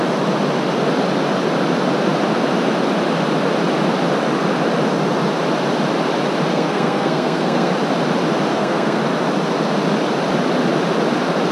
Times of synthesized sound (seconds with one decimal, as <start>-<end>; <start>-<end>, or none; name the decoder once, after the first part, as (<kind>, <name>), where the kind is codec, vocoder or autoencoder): 6.5-7.7 (codec, SNAC); 8.5-9.0